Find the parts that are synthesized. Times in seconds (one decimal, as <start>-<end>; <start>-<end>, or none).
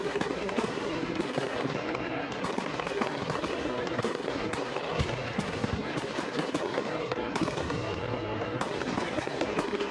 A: 0.0-9.9